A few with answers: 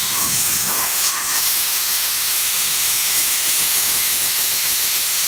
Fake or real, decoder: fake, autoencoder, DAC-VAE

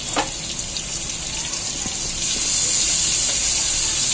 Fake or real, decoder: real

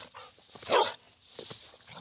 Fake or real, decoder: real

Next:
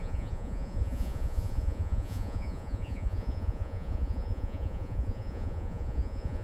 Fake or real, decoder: fake, vocoder, Vocos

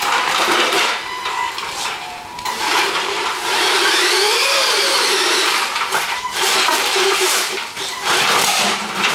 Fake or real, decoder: fake, vocoder, BigVGAN v2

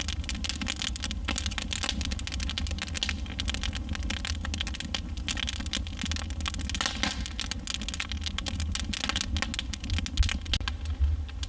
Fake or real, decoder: real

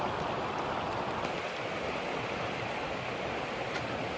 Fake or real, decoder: real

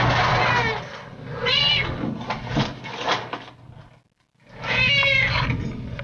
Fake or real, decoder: real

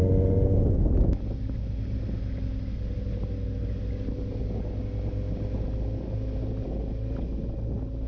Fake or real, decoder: real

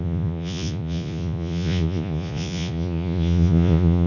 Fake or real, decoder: fake, vocoder, Vocos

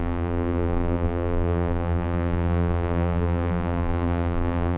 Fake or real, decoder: fake, vocoder, BigVGAN v2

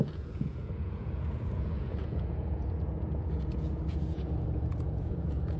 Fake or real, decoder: fake, vocoder, Vocos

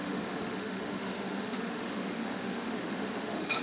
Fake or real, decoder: fake, autoencoder, DAC-VAE